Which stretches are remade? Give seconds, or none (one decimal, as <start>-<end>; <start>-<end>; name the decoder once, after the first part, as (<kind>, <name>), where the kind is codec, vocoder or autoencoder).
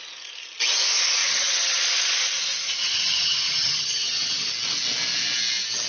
1.2-1.8 (vocoder, HiFi-GAN); 2.8-4.5